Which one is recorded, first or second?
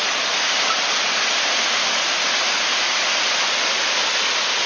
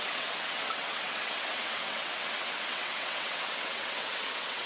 first